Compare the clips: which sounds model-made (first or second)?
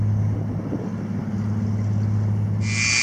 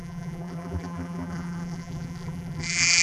second